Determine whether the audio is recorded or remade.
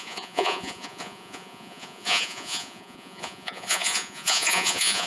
remade